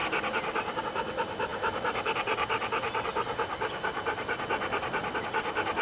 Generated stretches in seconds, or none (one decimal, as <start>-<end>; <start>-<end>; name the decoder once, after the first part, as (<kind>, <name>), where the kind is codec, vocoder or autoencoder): 0.0-0.8 (vocoder, BigVGAN v2); 1.5-2.1